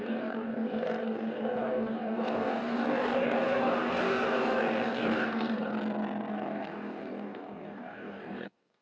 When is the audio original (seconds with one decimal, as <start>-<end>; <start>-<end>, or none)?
5.7-6.3